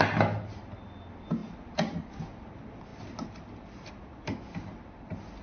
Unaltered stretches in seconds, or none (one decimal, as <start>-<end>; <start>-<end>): 0.0-5.4